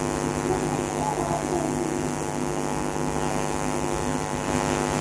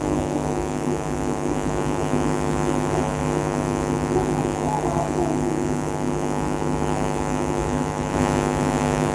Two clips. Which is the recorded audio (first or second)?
first